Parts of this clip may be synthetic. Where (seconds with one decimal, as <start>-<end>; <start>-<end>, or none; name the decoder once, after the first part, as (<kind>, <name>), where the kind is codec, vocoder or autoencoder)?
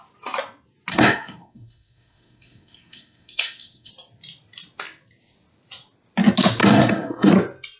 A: 0.9-3.9 (codec, SNAC); 6.6-7.3